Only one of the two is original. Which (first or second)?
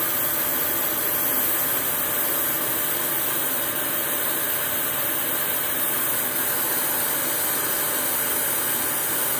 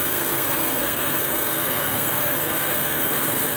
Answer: first